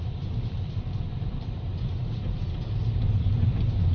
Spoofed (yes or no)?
no